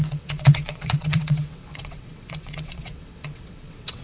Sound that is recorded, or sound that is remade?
remade